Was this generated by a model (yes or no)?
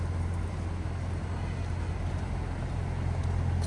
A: no